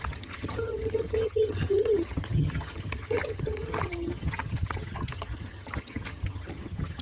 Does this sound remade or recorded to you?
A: remade